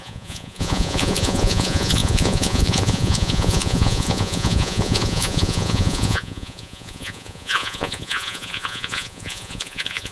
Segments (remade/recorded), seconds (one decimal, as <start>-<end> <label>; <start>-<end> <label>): 0.0-10.1 remade